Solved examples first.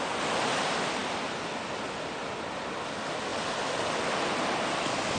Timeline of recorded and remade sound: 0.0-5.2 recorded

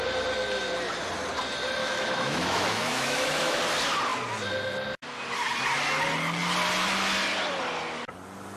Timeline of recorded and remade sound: 0.0-1.8 recorded; 1.8-3.6 remade; 3.6-8.6 recorded

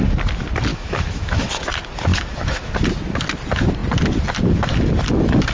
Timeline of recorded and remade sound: 0.0-0.7 recorded; 0.7-1.5 remade; 1.5-2.1 recorded; 2.1-2.7 remade; 2.7-5.5 recorded